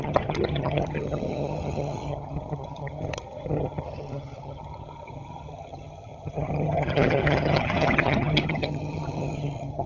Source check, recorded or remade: remade